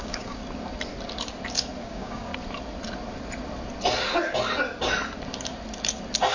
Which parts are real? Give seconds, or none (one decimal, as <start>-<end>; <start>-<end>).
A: 0.4-1.8; 2.3-6.3